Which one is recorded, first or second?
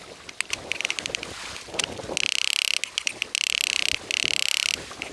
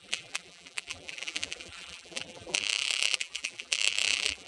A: first